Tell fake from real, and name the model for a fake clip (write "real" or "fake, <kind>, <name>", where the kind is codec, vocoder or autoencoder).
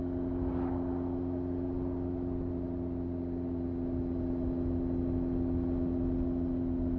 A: real